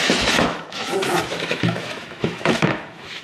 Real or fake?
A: fake